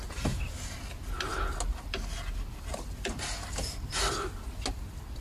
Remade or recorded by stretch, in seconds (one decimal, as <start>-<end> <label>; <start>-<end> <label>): 0.0-5.2 recorded